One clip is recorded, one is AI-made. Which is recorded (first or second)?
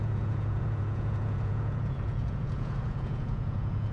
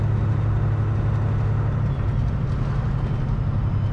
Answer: second